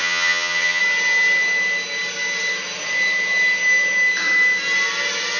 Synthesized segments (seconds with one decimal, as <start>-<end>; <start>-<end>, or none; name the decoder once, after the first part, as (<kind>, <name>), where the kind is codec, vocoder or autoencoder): 0.0-0.8 (vocoder, HiFi-GAN)